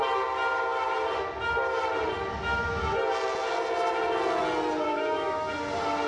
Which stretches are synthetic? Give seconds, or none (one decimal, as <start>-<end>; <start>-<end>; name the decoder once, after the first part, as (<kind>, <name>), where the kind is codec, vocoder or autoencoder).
4.9-5.5 (autoencoder, DAC-VAE)